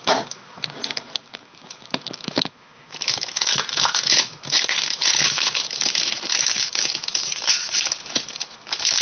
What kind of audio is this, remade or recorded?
remade